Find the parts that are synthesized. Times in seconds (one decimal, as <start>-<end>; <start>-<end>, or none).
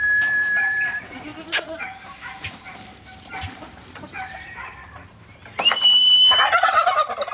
none